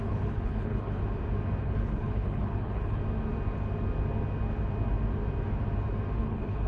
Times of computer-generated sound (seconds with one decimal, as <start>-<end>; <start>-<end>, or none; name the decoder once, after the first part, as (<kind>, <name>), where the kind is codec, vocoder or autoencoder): 0.0-1.0 (codec, HILCodec); 1.6-3.0; 6.2-6.7